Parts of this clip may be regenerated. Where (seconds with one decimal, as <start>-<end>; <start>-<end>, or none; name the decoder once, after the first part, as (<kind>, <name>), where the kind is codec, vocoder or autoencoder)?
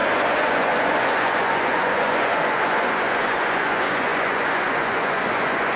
0.0-5.8 (vocoder, Vocos)